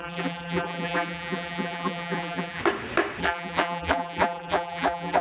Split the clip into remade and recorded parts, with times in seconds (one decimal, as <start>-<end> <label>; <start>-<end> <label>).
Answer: 0.0-2.6 remade; 2.6-3.2 recorded; 3.2-5.2 remade